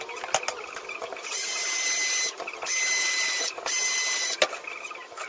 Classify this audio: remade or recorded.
recorded